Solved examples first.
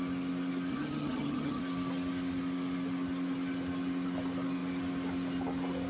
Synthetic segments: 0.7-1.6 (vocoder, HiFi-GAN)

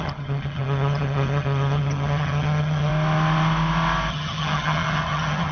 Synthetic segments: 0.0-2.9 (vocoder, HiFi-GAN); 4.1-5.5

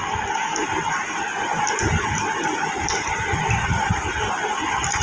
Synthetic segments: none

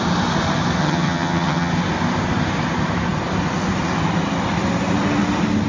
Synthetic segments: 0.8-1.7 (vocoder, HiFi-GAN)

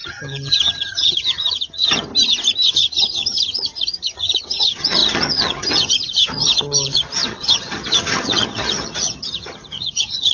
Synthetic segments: 0.0-2.1 (vocoder, HiFi-GAN); 2.7-10.3

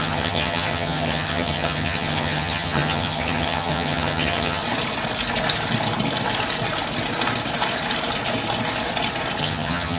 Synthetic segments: 0.0-4.6 (vocoder, HiFi-GAN); 9.4-10.0